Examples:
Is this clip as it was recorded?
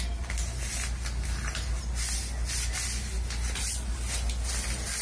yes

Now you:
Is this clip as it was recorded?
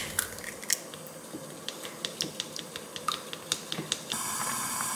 yes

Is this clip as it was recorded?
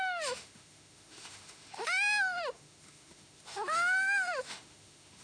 no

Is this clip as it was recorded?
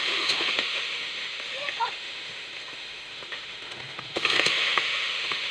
no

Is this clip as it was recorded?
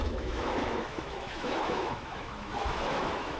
no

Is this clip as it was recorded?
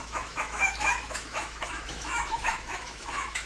no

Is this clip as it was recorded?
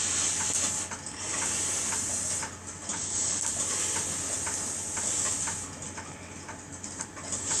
yes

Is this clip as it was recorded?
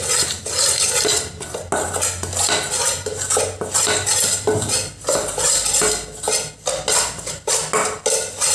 yes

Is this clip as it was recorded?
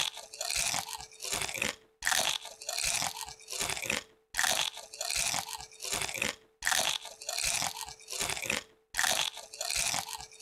yes